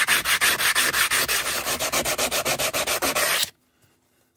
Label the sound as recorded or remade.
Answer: recorded